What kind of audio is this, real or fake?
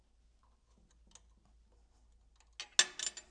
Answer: real